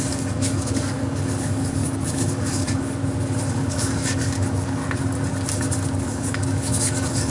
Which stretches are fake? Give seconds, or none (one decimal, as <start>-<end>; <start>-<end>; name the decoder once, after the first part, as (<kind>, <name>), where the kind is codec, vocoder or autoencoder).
0.0-3.0 (codec, DAC); 3.5-4.8; 6.0-7.3

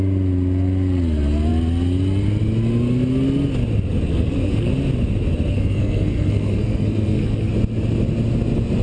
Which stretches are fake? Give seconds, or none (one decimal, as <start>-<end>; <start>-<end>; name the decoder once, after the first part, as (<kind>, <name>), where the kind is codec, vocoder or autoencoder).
4.1-4.7 (codec, SNAC); 5.5-7.5

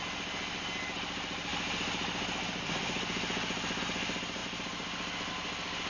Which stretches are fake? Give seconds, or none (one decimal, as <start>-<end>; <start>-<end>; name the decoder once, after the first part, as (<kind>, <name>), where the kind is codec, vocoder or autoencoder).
none

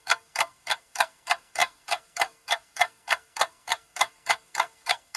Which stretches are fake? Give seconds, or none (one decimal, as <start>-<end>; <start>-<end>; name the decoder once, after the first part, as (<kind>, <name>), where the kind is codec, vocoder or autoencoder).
0.0-5.2 (codec, SNAC)

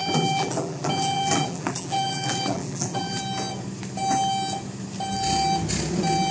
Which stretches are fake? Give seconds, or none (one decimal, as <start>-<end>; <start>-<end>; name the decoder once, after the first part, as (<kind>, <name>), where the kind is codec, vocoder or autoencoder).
0.0-3.2 (vocoder, BigVGAN v2)

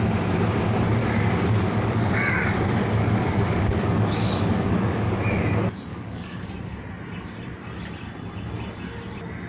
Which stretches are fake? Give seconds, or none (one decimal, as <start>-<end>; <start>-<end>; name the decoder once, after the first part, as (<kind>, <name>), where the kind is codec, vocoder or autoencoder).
1.0-5.2 (codec, DAC); 5.9-6.5